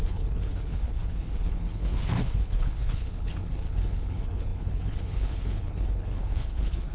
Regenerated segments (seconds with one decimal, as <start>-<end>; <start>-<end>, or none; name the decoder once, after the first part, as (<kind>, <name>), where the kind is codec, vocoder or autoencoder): 0.0-6.9 (codec, HILCodec)